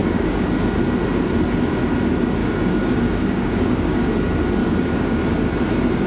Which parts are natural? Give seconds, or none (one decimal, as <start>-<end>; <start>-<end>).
0.5-2.4; 4.1-4.6; 5.2-6.1